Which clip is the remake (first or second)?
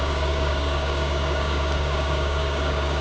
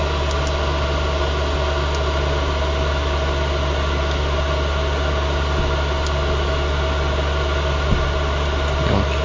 first